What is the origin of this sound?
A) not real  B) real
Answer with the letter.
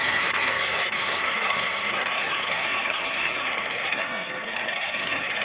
A